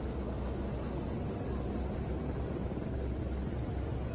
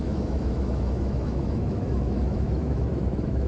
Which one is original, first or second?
first